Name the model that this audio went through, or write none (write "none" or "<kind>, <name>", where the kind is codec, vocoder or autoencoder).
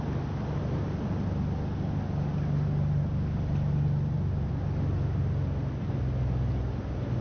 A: none